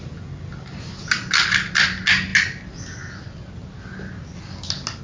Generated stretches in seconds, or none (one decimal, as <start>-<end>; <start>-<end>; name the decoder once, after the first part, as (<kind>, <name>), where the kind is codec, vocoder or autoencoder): none